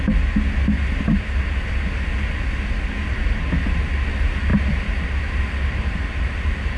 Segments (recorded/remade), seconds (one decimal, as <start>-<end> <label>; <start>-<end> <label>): 0.0-6.8 recorded